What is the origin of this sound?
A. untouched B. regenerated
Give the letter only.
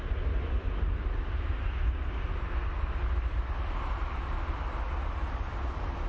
A